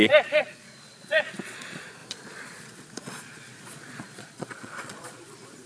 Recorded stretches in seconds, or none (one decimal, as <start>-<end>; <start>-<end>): none